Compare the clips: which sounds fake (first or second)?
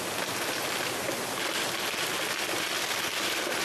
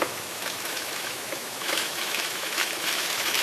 second